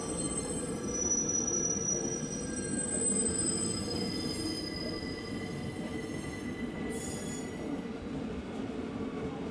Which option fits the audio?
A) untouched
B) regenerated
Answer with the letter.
A